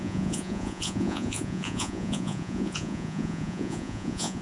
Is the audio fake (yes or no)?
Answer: yes